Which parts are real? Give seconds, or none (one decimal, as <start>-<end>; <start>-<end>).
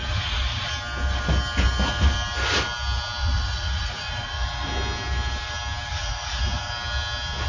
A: 0.7-3.2; 4.7-5.9; 6.7-7.5